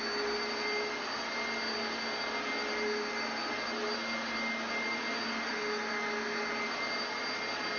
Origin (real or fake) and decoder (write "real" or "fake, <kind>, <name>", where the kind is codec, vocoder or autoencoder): real